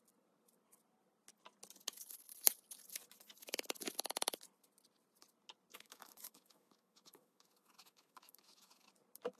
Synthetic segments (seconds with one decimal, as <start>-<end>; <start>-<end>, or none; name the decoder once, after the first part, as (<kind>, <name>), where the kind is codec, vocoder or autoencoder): 5.7-8.9 (autoencoder, DAC-VAE)